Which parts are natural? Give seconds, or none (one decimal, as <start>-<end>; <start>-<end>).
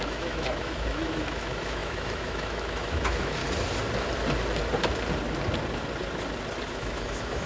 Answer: 3.4-6.7